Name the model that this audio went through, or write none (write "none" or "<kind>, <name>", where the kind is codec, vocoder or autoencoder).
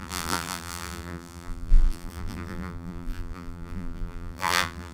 vocoder, BigVGAN v2